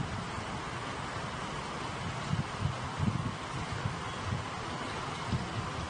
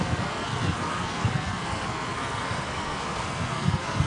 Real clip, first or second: first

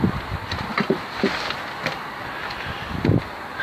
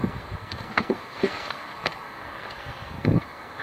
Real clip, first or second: first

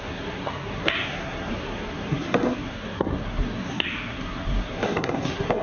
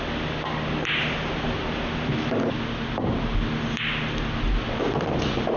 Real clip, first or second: second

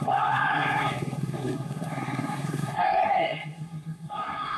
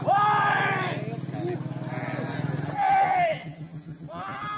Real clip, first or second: second